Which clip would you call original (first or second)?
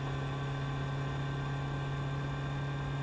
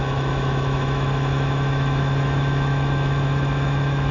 first